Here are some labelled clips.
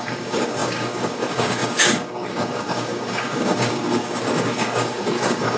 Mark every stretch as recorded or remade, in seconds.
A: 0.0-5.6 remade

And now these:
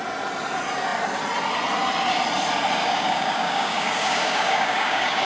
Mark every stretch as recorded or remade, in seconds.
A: 0.0-2.8 recorded; 2.8-5.2 remade

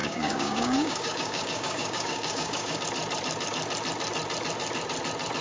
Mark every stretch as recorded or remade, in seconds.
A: 0.0-2.8 remade; 2.8-5.4 recorded

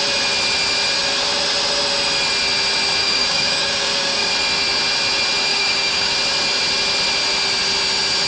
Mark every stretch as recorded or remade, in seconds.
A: 0.0-3.0 recorded; 3.0-4.3 remade; 4.3-5.5 recorded; 5.5-6.1 remade; 6.1-8.3 recorded